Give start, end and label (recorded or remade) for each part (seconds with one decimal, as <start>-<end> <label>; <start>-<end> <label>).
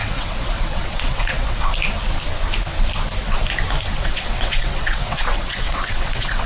0.0-1.7 remade; 1.7-4.0 recorded; 4.0-6.5 remade